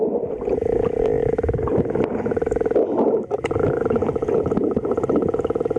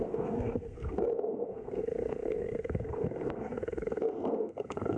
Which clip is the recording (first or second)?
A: first